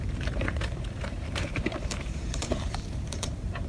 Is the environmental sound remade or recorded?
remade